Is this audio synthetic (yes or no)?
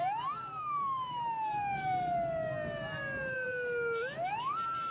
no